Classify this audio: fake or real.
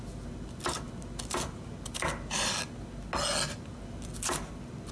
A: real